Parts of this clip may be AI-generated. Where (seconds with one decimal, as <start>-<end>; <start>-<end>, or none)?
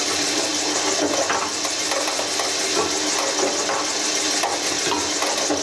none